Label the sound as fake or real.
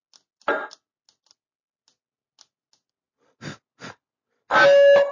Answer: real